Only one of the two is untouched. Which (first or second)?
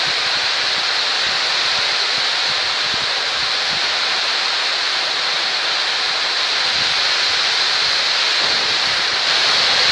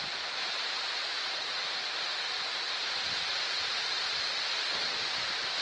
first